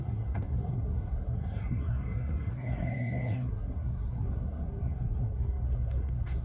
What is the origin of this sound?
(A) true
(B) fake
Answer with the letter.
B